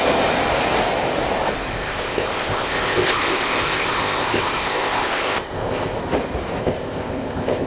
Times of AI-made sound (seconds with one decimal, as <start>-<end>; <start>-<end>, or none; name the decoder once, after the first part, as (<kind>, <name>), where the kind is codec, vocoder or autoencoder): 1.7-6.0 (codec, ZipCodec); 6.6-7.7